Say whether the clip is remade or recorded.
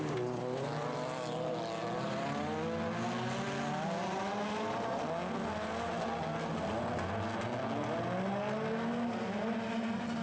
recorded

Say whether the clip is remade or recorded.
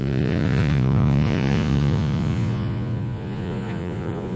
remade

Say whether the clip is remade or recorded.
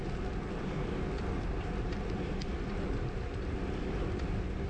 recorded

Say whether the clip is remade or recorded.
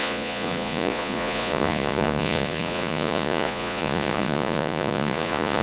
remade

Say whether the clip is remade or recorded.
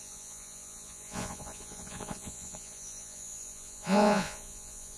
remade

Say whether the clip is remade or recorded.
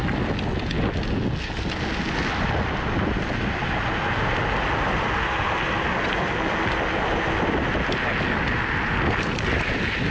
recorded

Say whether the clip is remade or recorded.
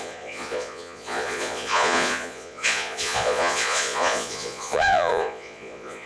remade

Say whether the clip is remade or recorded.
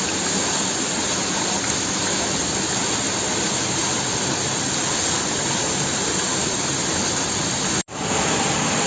recorded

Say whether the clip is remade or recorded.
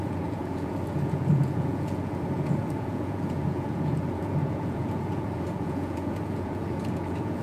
remade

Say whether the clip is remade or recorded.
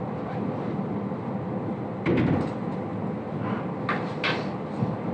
recorded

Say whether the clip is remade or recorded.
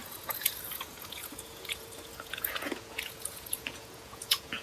remade